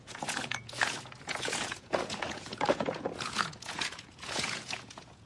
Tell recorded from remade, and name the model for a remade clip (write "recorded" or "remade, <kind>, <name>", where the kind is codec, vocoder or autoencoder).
remade, vocoder, Vocos